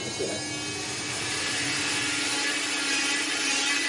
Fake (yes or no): no